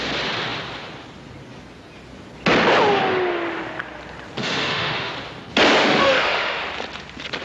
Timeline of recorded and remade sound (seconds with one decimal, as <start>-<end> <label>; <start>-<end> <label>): 0.0-4.4 recorded; 4.4-5.1 remade; 5.1-5.8 recorded; 5.8-6.6 remade; 6.6-7.4 recorded